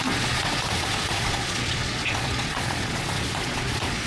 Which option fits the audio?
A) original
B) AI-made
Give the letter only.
B